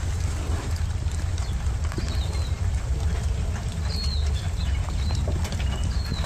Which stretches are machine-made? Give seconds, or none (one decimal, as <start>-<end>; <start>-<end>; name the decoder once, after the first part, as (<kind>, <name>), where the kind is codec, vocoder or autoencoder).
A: none